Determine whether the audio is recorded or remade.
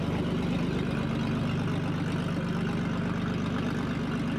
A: recorded